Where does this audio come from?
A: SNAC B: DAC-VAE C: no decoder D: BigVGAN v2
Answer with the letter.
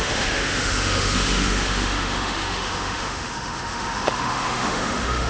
B